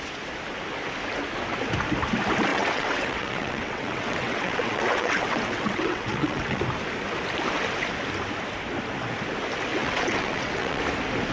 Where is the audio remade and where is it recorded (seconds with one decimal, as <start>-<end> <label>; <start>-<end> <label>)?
0.0-2.5 recorded; 2.5-6.6 remade; 6.6-9.7 recorded; 9.7-10.8 remade; 10.8-11.3 recorded